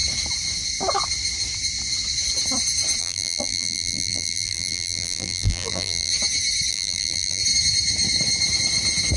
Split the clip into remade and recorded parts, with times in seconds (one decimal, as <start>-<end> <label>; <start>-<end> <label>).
0.0-3.0 recorded; 3.0-6.1 remade; 6.1-6.7 recorded; 6.7-7.4 remade; 7.4-9.2 recorded